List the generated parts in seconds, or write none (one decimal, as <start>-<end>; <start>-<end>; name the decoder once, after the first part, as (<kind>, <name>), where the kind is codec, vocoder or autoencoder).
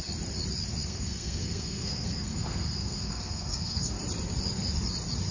0.8-4.0 (codec, SNAC)